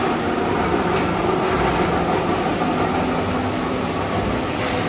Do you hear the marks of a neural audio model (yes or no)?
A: no